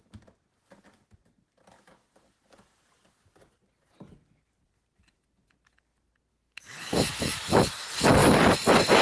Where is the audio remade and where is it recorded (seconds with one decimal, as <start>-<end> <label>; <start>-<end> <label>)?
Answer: 0.0-6.3 recorded; 6.3-7.6 remade; 7.6-9.0 recorded